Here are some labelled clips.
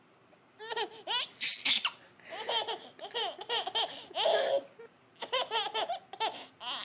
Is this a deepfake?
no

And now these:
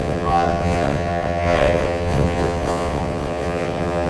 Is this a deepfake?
yes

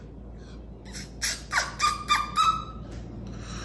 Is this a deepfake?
no